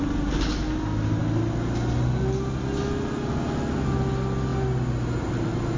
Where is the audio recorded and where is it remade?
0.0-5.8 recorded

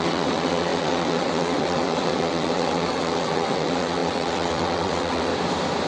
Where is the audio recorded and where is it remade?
0.0-5.3 remade; 5.3-5.9 recorded

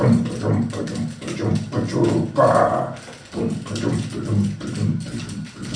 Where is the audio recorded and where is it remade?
0.0-5.8 recorded

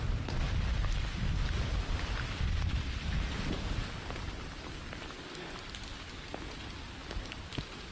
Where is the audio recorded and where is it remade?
0.0-7.9 recorded